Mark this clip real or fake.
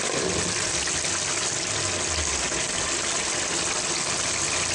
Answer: real